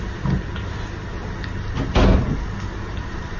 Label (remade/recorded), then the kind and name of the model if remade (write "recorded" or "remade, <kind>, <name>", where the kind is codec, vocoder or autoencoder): recorded